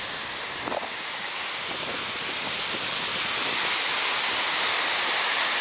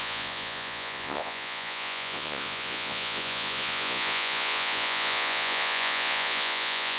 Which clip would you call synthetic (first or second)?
second